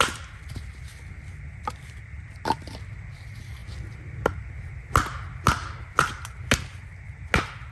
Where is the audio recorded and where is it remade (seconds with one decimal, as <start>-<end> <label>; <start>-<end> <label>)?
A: 0.0-7.7 recorded